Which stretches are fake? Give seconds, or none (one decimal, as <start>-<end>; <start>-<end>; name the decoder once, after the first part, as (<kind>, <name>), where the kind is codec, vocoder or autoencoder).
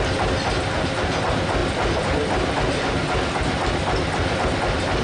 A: none